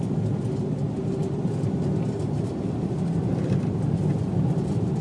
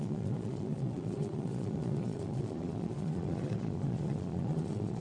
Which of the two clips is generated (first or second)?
second